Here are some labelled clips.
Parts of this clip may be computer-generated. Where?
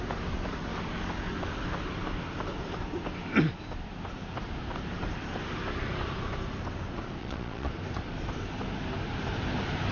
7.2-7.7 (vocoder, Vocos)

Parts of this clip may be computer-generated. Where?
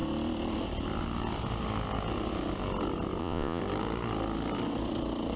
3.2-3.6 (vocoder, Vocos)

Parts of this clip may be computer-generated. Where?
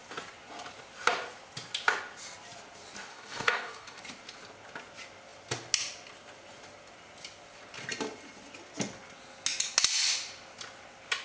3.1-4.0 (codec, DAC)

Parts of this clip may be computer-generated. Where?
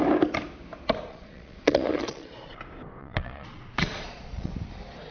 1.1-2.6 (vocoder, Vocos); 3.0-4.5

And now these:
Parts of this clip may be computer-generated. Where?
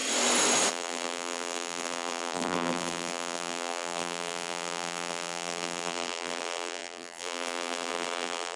0.7-8.6 (vocoder, BigVGAN v2)